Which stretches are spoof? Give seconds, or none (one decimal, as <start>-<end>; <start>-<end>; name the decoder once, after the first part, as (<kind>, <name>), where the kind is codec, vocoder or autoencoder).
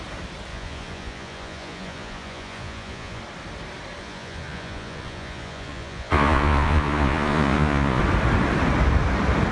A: 0.5-3.2 (vocoder, Vocos); 4.0-8.0